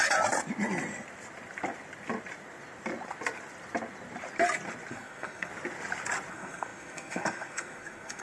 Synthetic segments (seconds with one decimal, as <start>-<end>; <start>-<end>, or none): 4.9-5.5; 6.3-8.2